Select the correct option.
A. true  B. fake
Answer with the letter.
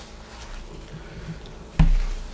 A